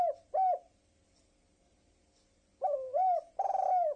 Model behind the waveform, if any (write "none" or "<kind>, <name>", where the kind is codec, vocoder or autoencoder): none